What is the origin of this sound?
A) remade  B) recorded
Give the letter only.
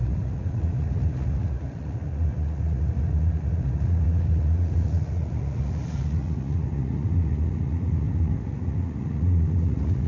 A